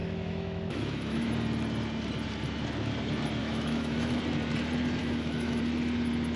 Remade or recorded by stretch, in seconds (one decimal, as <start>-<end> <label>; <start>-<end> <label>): 0.0-1.3 remade; 1.3-3.4 recorded; 3.4-4.2 remade; 4.2-5.0 recorded; 5.0-5.6 remade; 5.6-6.4 recorded